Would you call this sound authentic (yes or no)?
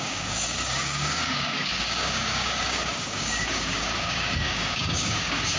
no